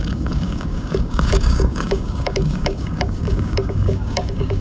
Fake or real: fake